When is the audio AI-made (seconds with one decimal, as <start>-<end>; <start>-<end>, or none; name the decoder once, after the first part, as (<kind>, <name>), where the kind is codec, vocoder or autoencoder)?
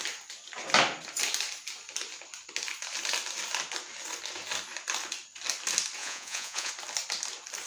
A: 6.0-6.7 (vocoder, Vocos)